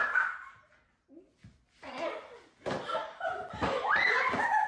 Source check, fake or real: real